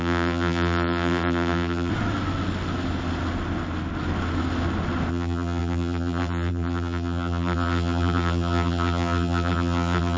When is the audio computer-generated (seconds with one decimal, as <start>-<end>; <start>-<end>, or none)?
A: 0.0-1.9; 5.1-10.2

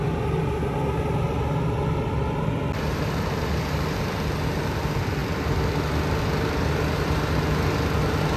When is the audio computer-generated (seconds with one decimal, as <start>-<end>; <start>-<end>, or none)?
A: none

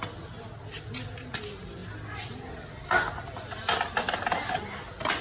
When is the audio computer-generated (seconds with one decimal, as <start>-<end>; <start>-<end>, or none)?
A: none

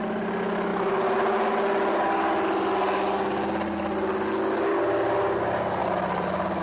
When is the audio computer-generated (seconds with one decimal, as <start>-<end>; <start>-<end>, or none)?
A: none